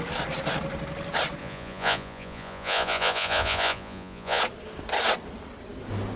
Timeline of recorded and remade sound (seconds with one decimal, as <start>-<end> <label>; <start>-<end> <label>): 0.0-1.4 recorded; 1.4-4.4 remade; 4.4-6.2 recorded